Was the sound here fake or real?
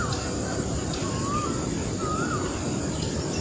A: real